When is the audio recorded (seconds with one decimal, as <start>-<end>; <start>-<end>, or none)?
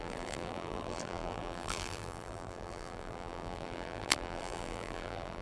none